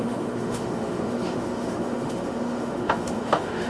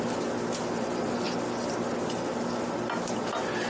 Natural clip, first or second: second